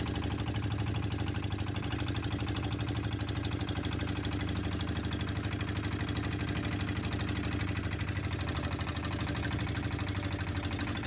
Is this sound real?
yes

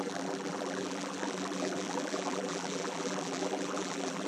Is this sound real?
no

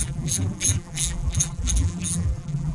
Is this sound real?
no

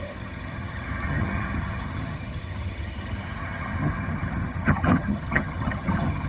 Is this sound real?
no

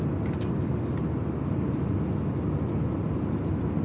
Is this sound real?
yes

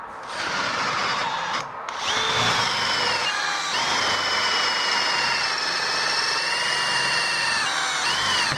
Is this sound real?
yes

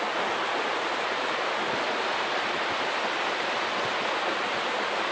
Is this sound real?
yes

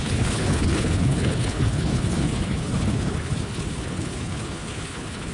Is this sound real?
no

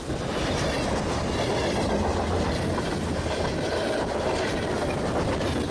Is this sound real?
yes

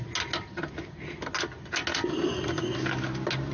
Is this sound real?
yes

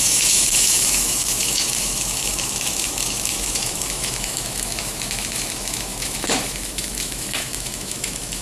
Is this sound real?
no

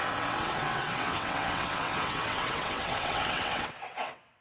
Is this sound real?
no